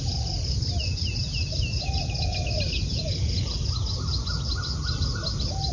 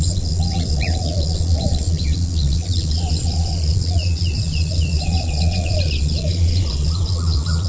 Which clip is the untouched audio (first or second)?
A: first